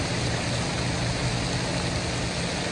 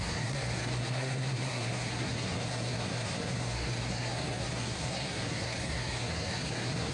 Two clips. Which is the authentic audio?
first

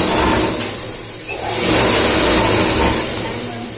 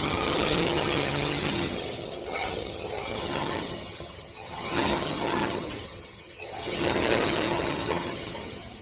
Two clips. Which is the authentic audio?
first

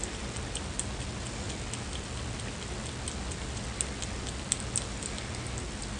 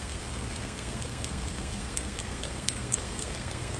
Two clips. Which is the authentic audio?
first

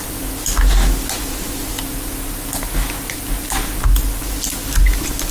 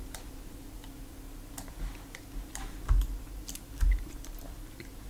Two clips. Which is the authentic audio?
first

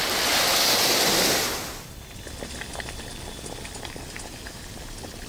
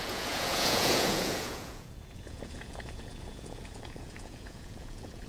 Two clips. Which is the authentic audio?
first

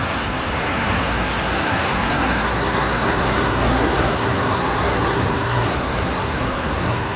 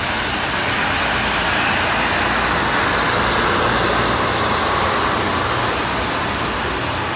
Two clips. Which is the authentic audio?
second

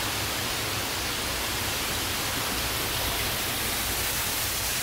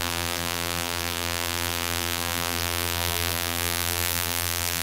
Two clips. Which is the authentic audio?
first